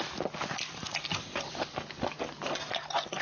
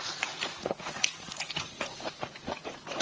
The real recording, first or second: first